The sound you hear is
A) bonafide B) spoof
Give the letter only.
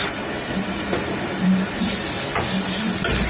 A